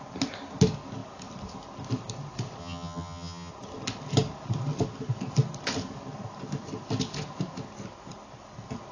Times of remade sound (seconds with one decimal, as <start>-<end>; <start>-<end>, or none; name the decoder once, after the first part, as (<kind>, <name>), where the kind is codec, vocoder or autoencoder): 2.6-3.5 (vocoder, HiFi-GAN)